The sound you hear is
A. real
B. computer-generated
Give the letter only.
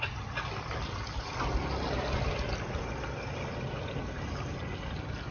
A